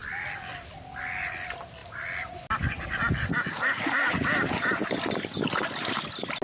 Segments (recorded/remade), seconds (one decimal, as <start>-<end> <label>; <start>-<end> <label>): 0.0-1.0 remade; 1.0-6.4 recorded